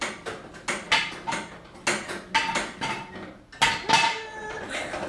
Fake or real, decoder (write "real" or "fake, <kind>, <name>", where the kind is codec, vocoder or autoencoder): real